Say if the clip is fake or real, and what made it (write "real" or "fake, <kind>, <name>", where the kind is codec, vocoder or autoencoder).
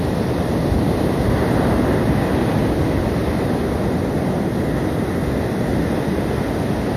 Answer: real